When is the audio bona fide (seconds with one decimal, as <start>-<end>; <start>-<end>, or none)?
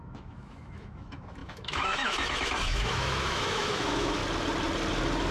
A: 4.2-5.3